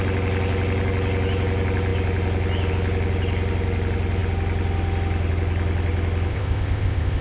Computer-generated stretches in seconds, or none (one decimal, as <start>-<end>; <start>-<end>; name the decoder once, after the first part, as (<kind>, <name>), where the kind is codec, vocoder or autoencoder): 6.3-7.2 (codec, ZipCodec)